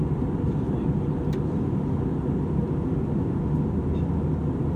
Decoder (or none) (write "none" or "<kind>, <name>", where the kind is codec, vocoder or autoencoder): none